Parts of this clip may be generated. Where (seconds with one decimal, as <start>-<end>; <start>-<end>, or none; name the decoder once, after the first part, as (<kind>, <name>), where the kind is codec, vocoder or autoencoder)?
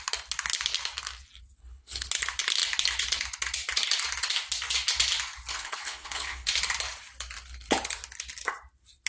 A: 1.6-2.1 (codec, HILCodec); 5.5-6.5